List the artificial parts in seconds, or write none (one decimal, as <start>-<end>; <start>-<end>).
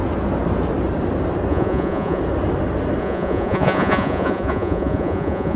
1.5-2.2; 3.0-5.6